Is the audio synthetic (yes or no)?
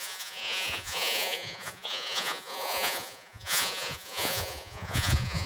yes